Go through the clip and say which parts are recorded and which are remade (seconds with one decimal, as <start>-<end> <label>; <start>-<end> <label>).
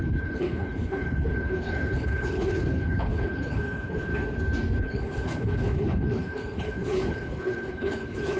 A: 0.0-4.1 remade; 4.1-4.8 recorded; 4.8-8.4 remade